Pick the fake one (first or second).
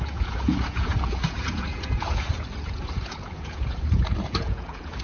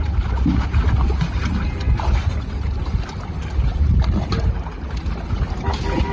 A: first